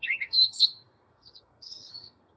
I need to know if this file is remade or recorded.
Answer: remade